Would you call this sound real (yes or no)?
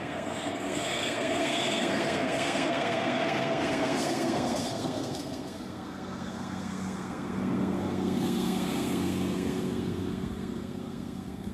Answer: no